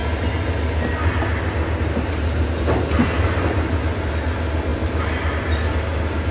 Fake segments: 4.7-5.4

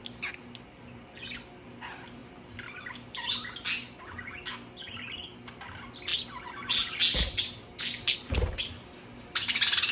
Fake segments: none

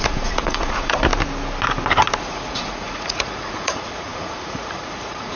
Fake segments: 0.0-1.1; 2.2-5.4

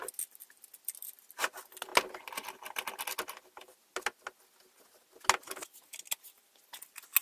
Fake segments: none

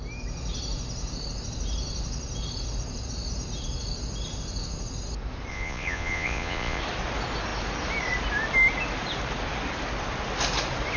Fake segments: 5.5-6.8

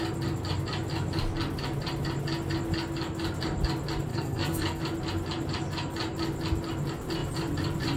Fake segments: 4.1-4.8

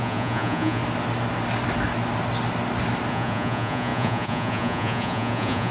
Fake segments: 0.0-0.8; 3.1-5.7

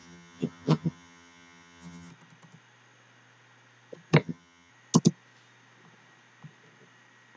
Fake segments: 0.0-2.1; 4.2-4.7